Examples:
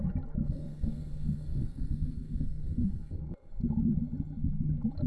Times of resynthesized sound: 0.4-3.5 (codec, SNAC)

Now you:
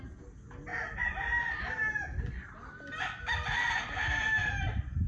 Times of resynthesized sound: none

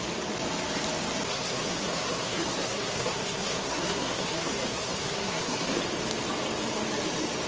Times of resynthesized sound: 1.3-5.8 (codec, SNAC)

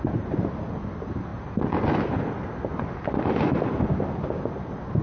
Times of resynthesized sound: none

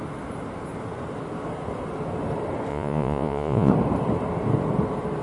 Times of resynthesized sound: 2.7-3.7 (vocoder, Vocos)

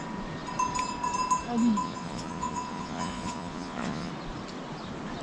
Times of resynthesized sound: 1.8-4.1 (vocoder, Vocos)

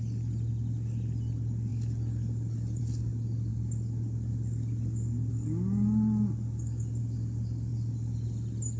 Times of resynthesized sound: none

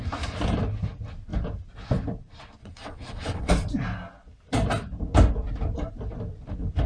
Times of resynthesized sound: 2.6-3.5 (vocoder, WaveNeXt)